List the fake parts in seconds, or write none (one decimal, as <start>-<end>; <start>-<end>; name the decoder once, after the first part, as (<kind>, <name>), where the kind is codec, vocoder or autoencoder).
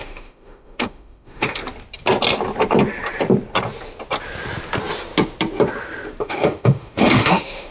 0.0-1.6 (autoencoder, DAC-VAE); 6.2-7.7